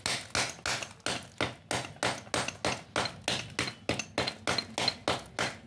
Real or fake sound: real